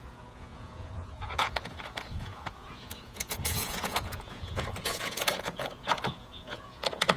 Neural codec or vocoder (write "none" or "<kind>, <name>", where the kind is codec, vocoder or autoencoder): vocoder, Vocos